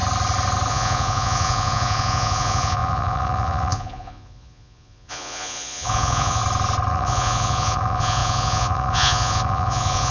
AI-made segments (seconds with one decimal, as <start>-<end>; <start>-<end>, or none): 0.7-6.4; 6.9-10.1